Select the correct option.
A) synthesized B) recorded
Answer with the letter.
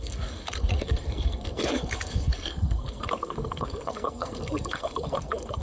A